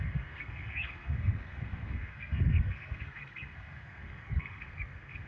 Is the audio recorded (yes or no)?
no